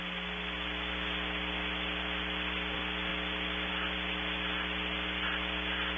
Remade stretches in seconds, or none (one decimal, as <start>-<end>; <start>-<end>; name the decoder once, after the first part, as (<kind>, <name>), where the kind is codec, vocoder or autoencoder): none